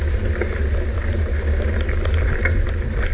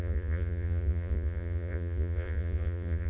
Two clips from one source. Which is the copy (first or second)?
second